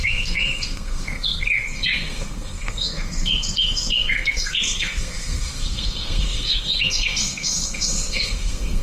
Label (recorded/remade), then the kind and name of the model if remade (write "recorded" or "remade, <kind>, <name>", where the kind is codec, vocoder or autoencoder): remade, codec, SNAC